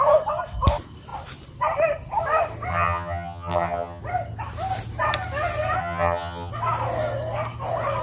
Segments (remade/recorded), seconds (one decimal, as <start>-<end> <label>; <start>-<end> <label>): 0.0-2.7 recorded; 2.7-4.0 remade; 4.0-5.8 recorded; 5.8-6.5 remade; 6.5-8.0 recorded

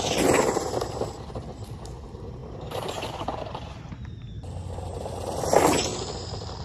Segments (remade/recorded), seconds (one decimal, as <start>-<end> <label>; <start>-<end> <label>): 0.0-2.4 recorded; 2.4-3.9 remade; 3.9-6.6 recorded

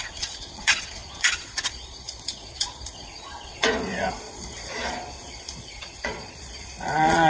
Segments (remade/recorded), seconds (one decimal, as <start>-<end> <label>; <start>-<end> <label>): 0.0-7.3 remade